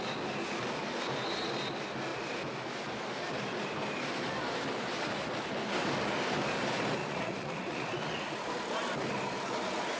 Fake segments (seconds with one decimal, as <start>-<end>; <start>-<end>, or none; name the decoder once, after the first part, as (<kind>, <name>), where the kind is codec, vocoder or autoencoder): 7.0-8.5 (vocoder, Vocos)